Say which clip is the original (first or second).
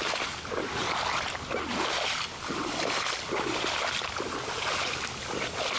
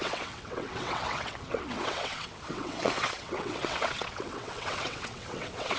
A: first